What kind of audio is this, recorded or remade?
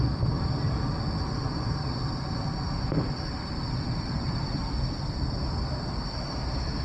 recorded